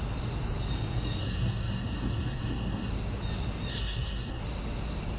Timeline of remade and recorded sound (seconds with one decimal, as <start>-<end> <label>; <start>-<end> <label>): 0.0-1.2 recorded; 1.2-2.9 remade; 2.9-3.7 recorded; 3.7-4.4 remade; 4.4-5.2 recorded